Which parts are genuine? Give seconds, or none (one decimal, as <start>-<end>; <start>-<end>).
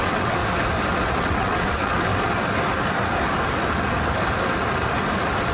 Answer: 0.4-1.2; 2.1-5.5